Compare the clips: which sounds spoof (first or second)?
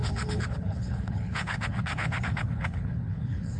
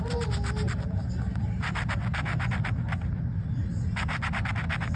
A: first